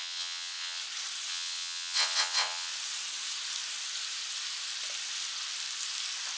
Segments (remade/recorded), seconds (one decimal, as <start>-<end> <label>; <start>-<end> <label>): 0.0-0.8 remade; 0.8-1.3 recorded; 1.3-2.7 remade; 2.7-6.4 recorded

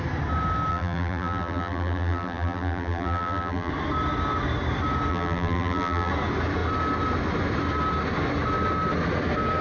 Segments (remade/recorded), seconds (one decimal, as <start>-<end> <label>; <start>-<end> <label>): 0.0-0.7 recorded; 0.7-3.7 remade; 3.7-5.1 recorded; 5.1-6.1 remade; 6.1-9.6 recorded

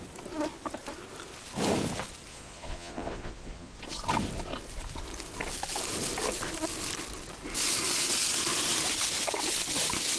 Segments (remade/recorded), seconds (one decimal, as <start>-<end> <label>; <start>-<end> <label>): 0.0-2.3 recorded; 2.3-3.8 remade; 3.8-10.2 recorded

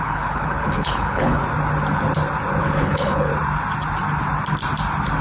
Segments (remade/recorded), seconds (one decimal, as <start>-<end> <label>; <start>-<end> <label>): 0.0-1.4 remade; 1.4-2.6 recorded; 2.6-3.3 remade; 3.3-5.2 recorded

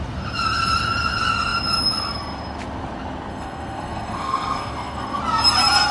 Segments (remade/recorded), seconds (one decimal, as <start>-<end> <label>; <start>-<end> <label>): 0.0-3.3 recorded; 3.3-5.2 remade; 5.2-5.9 recorded